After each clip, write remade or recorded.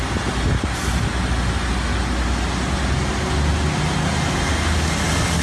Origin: recorded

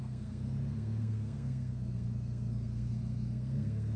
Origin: remade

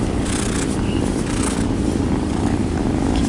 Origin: remade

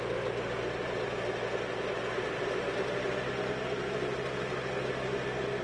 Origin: recorded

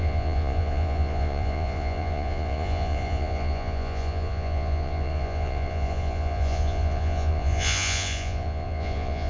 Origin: remade